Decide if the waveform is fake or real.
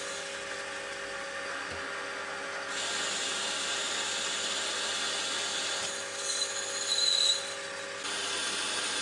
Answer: real